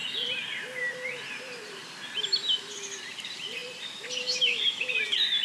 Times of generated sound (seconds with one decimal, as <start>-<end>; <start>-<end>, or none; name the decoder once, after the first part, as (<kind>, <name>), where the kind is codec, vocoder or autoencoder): 0.8-5.4 (vocoder, BigVGAN v2)